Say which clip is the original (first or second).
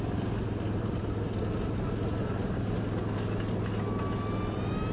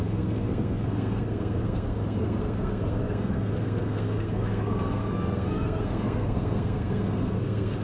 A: first